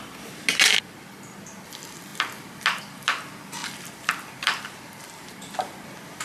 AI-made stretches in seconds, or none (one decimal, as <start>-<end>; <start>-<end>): none